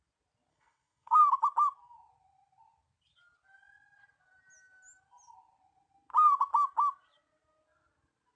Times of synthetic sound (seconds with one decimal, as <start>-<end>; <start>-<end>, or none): 0.5-1.2